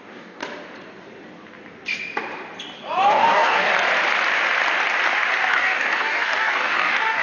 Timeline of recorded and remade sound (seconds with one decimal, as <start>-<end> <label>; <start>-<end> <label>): 0.0-0.4 remade; 0.4-3.1 recorded; 3.1-3.7 remade; 3.7-5.5 recorded; 5.5-7.2 remade